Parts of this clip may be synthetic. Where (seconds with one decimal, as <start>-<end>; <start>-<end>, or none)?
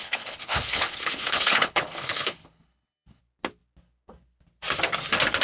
0.0-3.2